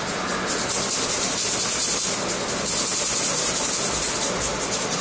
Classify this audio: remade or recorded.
recorded